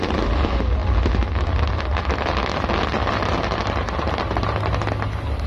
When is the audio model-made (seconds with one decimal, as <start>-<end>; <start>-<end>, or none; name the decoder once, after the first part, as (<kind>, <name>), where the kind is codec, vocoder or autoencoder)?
none